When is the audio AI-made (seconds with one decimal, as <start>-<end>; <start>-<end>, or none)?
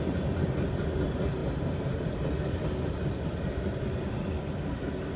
none